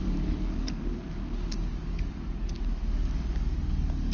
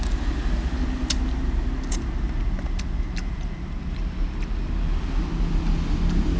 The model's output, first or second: first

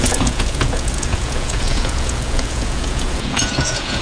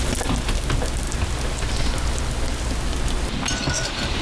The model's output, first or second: first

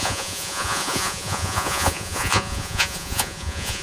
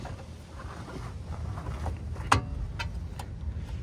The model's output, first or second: first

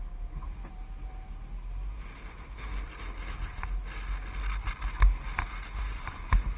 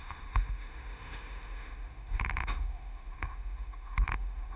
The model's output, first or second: second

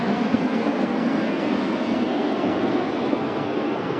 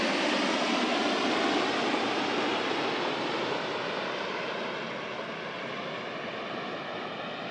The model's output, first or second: first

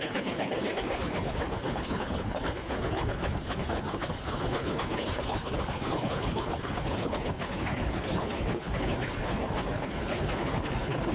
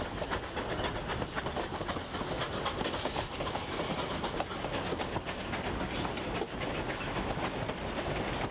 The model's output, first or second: first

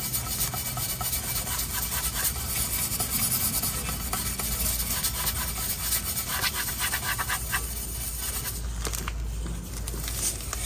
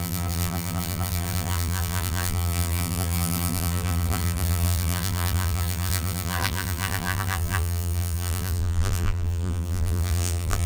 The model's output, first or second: second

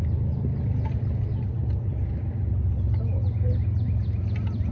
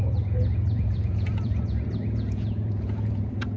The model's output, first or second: second